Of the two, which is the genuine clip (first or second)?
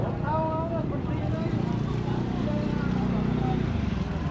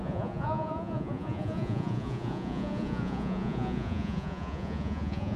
first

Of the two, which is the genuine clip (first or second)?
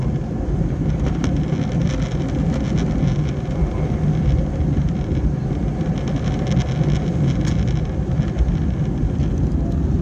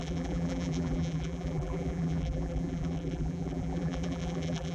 first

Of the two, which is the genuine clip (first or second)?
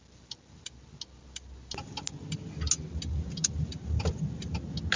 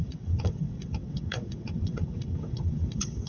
first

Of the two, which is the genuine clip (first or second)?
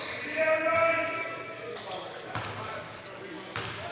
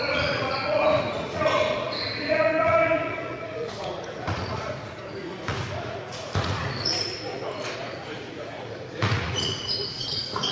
first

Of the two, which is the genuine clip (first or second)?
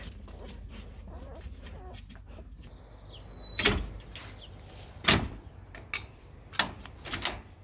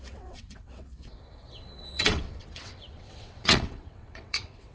first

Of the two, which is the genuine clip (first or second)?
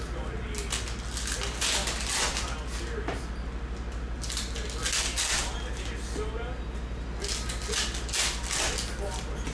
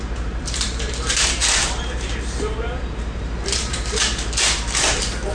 first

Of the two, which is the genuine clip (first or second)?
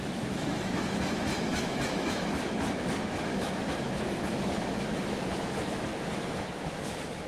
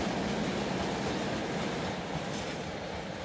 second